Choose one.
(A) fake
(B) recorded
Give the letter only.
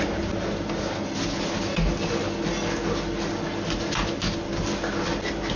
B